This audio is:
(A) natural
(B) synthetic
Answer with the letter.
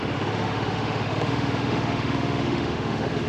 B